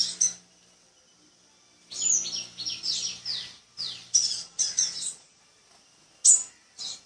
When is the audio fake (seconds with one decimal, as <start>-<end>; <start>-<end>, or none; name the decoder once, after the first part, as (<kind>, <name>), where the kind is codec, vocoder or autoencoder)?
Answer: 4.2-5.4 (vocoder, Vocos)